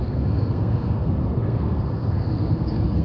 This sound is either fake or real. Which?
fake